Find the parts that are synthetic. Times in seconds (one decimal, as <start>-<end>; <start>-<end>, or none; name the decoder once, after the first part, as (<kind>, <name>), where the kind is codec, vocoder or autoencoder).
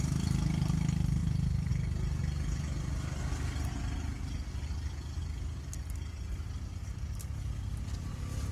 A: 1.2-1.7 (vocoder, Vocos)